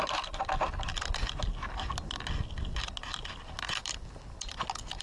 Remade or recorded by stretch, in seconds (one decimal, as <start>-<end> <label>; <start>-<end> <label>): 0.0-5.0 recorded